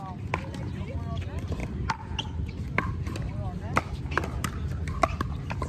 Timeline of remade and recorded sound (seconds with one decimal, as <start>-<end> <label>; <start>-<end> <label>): 0.0-5.7 recorded